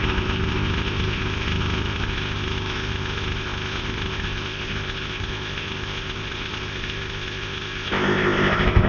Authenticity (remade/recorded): remade